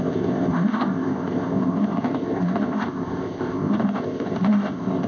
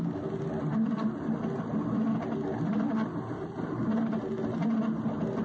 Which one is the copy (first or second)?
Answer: first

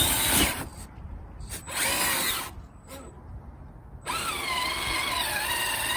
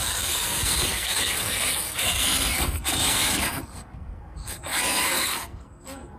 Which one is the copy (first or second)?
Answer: second